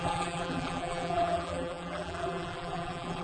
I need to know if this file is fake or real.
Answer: fake